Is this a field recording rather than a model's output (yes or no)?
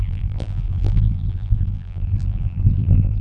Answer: no